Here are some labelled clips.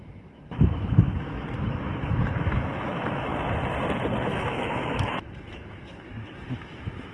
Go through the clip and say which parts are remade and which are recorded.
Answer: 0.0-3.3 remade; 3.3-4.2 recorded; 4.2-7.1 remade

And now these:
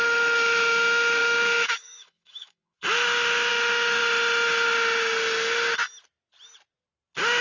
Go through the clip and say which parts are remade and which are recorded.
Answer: 0.0-4.0 remade; 4.0-7.4 recorded

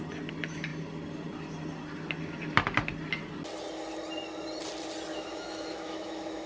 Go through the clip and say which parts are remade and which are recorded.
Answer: 0.0-5.1 recorded; 5.1-6.5 remade

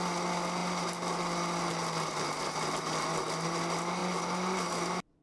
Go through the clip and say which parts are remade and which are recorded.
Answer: 0.0-5.2 recorded

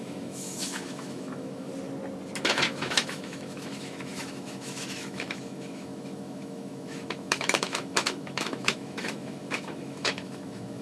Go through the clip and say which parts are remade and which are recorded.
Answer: 0.0-1.7 remade; 1.7-2.4 recorded; 2.4-10.8 remade